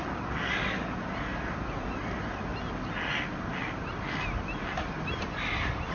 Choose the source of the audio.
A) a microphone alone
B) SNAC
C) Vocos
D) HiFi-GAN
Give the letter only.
A